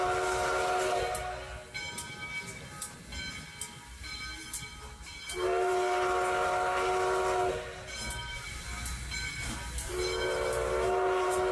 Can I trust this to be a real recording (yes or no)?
yes